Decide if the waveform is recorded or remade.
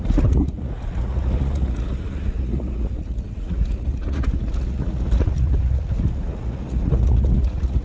remade